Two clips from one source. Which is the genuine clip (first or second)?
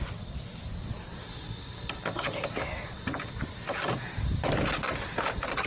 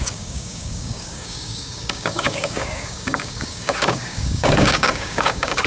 first